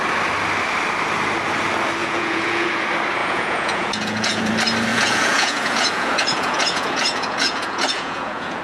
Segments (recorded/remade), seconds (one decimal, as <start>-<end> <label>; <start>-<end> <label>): 0.0-2.0 recorded; 2.0-2.7 remade; 2.7-3.2 recorded; 3.2-4.5 remade; 4.5-4.9 recorded; 4.9-8.6 remade